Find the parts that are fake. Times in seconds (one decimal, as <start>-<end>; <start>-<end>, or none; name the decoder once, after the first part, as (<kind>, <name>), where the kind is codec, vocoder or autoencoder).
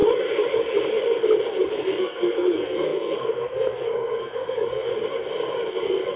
1.7-4.9 (codec, SNAC); 5.7-6.2